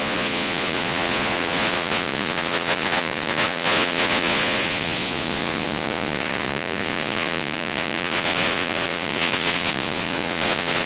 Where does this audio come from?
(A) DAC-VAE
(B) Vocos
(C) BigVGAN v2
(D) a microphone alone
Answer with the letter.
B